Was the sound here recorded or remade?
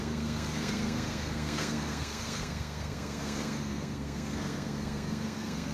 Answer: remade